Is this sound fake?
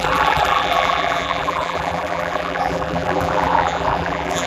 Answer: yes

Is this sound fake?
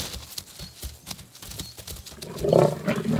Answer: no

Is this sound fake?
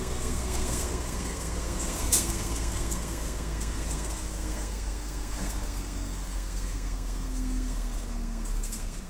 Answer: yes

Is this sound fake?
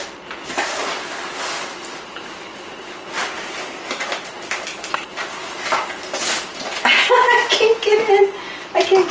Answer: no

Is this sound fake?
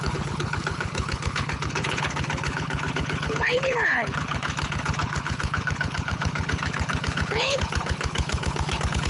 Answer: yes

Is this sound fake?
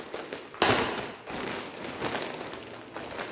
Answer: no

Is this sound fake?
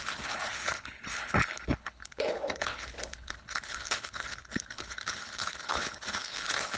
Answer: yes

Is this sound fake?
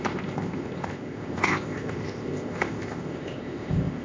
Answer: yes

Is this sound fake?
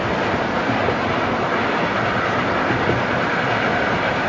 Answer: no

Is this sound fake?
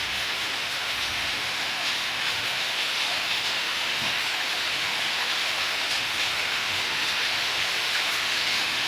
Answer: yes